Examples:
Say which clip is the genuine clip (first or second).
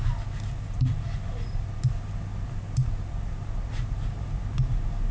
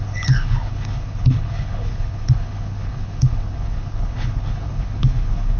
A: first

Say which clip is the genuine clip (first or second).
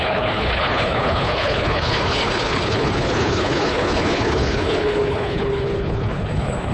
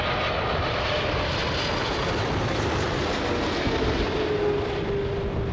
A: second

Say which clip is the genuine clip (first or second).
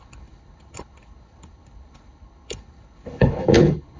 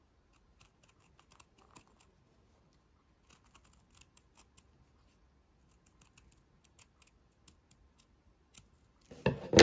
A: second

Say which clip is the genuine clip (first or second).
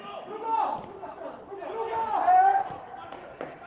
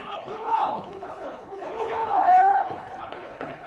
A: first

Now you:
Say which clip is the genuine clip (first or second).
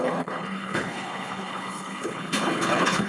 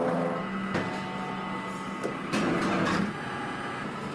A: second